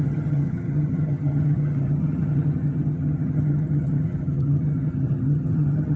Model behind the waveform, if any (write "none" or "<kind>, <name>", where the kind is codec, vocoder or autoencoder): vocoder, HiFi-GAN